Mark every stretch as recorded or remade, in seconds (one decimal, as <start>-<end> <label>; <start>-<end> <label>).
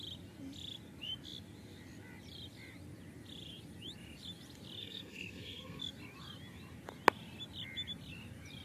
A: 0.0-4.8 recorded; 4.8-5.8 remade; 5.8-8.6 recorded